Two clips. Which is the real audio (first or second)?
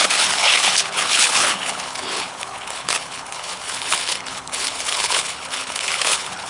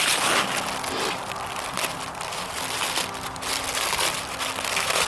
second